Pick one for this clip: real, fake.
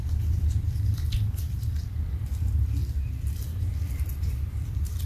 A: fake